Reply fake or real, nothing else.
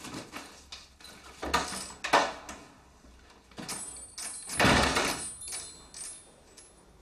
real